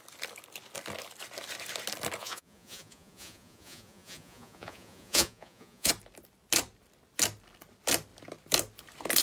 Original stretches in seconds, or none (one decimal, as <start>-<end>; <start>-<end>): 0.0-2.2; 5.9-9.2

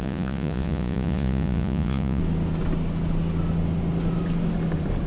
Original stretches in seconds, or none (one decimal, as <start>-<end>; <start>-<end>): 2.2-5.1

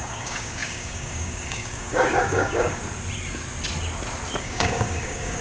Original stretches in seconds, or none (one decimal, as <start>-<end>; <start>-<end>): 2.8-4.4

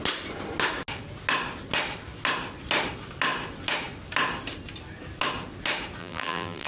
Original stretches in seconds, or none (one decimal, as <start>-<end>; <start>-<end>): 0.0-6.0